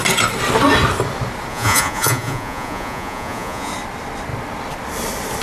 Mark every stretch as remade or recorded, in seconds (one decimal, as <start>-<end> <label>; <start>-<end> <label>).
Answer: 0.0-1.5 recorded; 1.5-3.7 remade; 3.7-5.4 recorded